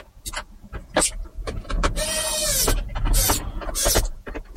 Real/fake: fake